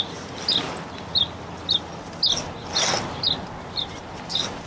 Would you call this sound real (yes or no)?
yes